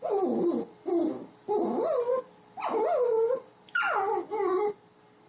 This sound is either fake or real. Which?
real